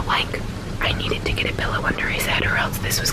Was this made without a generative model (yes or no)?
yes